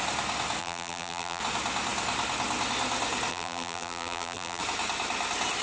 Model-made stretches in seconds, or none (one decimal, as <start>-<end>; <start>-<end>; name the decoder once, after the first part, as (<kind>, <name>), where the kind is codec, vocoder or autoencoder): 0.6-1.4 (vocoder, BigVGAN v2); 3.3-4.6